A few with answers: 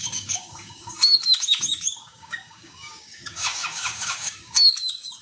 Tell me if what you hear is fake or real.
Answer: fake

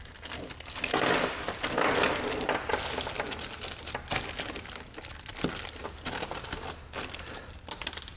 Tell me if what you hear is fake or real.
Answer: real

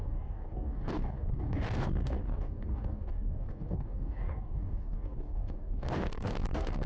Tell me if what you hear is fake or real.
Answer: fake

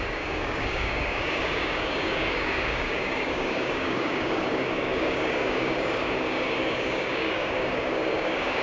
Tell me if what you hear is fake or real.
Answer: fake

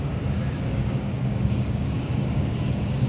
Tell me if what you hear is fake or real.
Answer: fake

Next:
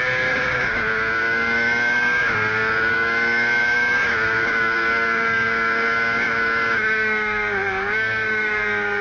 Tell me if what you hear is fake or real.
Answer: fake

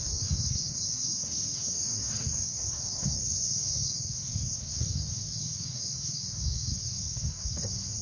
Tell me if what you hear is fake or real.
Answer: fake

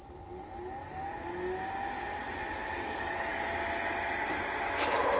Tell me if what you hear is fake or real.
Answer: real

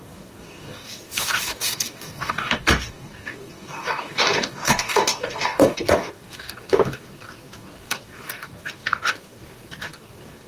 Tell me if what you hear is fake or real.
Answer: fake